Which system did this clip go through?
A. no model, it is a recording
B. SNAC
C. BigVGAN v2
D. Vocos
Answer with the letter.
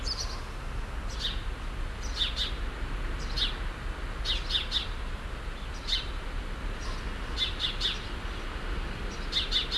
A